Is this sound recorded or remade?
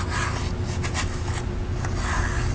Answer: recorded